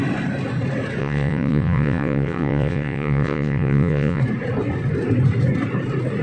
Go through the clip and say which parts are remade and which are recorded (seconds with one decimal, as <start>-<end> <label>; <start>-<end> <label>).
0.0-1.0 recorded; 1.0-4.2 remade; 4.2-6.2 recorded